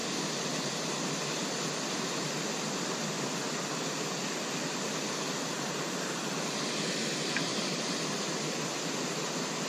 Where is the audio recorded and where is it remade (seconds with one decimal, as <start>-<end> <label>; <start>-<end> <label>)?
0.0-9.7 recorded